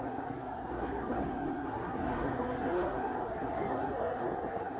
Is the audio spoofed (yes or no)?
yes